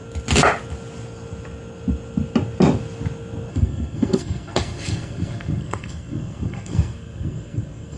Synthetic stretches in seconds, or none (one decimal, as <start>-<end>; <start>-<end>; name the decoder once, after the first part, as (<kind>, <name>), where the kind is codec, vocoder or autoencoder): 3.5-8.0 (codec, SNAC)